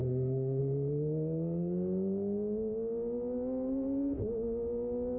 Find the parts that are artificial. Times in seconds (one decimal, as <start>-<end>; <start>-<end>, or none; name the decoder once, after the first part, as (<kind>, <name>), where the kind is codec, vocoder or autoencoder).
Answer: 0.0-0.6 (autoencoder, DAC-VAE)